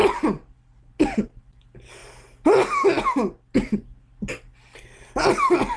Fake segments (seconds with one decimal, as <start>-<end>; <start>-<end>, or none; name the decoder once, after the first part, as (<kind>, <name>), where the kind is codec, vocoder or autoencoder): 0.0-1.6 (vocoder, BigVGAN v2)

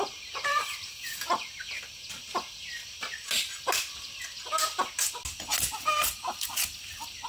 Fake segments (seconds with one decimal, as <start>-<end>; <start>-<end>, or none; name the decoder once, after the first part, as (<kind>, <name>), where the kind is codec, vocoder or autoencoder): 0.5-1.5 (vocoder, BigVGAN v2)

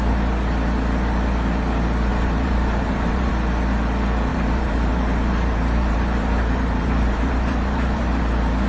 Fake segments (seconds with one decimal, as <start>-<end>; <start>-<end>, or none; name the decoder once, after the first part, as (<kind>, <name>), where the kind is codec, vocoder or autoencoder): 2.1-3.3 (vocoder, BigVGAN v2); 4.3-8.2

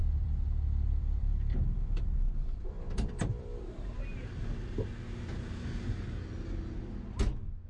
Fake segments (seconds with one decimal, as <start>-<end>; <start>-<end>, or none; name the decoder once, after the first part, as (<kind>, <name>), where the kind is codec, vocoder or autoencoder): 0.0-3.6 (vocoder, BigVGAN v2)

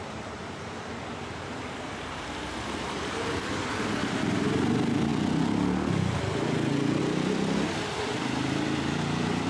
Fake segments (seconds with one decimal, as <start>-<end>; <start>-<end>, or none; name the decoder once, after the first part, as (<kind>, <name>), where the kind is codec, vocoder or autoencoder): 0.0-5.1 (vocoder, BigVGAN v2); 7.0-9.5

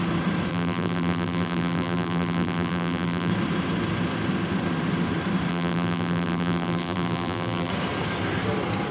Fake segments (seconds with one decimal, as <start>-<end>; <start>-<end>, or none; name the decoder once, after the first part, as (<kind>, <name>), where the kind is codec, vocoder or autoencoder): 0.5-3.3 (vocoder, BigVGAN v2); 5.5-7.7